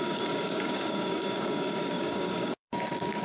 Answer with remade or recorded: remade